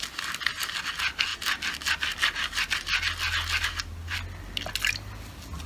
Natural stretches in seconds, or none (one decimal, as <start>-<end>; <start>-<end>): 0.0-5.7